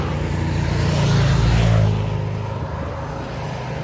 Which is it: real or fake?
real